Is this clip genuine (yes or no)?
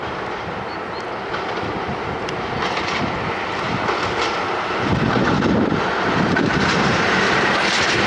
no